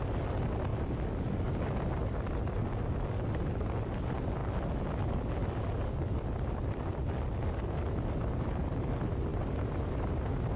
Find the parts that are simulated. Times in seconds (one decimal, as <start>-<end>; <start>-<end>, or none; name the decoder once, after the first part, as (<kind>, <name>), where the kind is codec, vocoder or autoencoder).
9.3-10.6 (vocoder, BigVGAN v2)